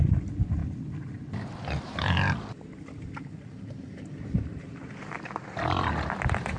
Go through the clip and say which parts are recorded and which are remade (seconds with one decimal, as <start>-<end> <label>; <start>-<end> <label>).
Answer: 0.0-0.6 recorded; 0.6-1.6 remade; 1.6-6.6 recorded